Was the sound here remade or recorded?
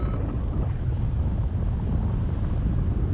recorded